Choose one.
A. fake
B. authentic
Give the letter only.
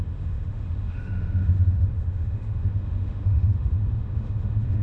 A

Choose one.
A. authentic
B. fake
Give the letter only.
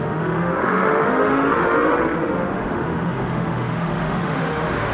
B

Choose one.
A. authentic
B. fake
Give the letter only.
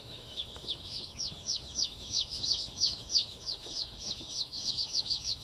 B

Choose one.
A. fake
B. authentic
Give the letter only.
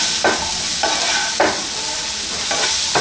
B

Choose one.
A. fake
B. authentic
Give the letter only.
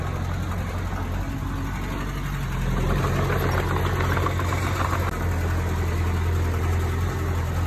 B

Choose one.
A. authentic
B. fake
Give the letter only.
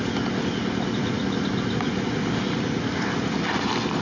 A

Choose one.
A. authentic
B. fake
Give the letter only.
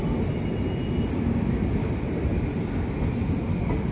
A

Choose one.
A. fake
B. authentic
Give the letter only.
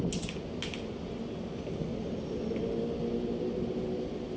B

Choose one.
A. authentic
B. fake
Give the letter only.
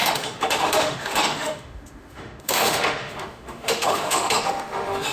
B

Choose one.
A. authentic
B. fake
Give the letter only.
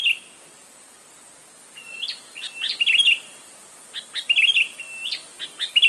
A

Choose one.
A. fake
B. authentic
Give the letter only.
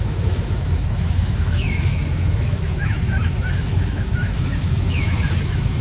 A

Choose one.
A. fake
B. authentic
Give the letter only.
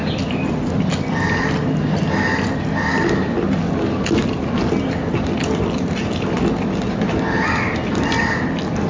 B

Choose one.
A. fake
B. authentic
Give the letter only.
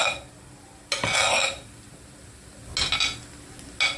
B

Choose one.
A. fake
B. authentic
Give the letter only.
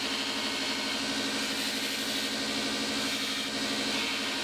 B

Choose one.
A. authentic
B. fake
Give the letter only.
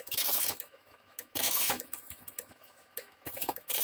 B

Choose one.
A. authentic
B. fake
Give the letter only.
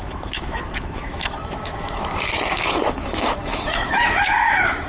B